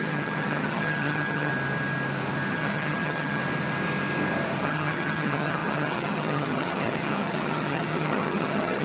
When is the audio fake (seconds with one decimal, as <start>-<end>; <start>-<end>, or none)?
0.0-1.5; 2.5-3.4; 4.6-8.8